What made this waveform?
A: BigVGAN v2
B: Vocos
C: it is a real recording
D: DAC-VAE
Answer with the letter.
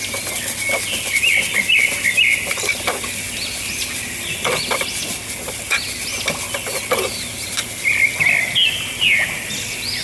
C